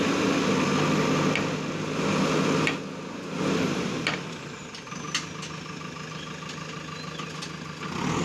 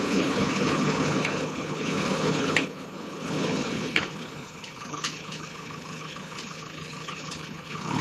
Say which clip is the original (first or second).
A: first